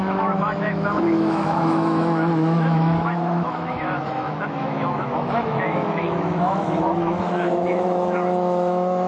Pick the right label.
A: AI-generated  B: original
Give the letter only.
A